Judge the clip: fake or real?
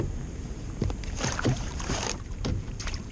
fake